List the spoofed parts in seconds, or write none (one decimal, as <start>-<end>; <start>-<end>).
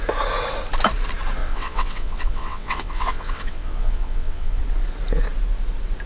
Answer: 1.4-4.6